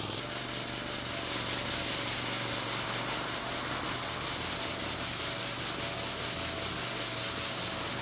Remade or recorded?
recorded